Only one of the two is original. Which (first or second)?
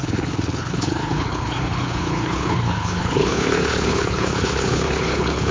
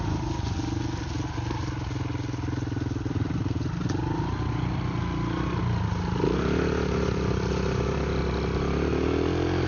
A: second